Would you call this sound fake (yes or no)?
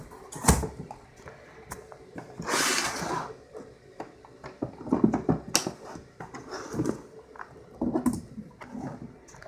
no